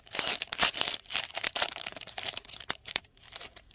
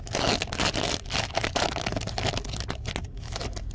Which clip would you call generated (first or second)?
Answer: first